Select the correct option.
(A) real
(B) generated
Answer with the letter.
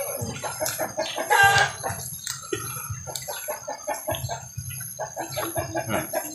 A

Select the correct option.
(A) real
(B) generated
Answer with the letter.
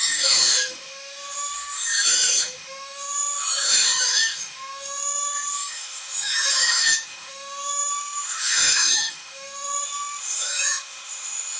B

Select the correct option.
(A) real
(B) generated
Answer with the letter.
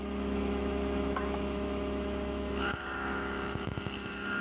B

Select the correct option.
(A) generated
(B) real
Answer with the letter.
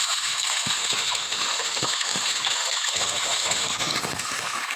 A